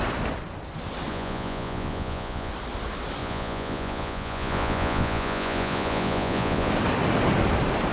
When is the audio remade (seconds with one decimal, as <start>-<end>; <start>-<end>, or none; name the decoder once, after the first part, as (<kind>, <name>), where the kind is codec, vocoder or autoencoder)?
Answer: 1.1-2.5 (vocoder, Vocos); 3.2-6.7